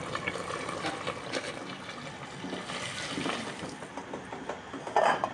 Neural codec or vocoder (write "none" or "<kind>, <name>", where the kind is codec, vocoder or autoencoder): none